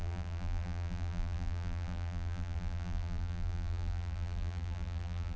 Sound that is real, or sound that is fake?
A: fake